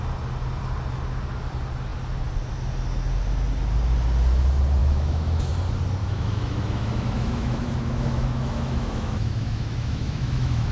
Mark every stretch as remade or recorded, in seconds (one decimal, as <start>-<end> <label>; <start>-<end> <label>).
0.0-4.8 recorded; 4.8-5.5 remade; 5.5-6.0 recorded; 6.0-10.7 remade